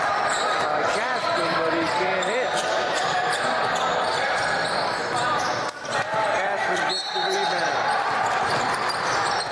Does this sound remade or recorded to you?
remade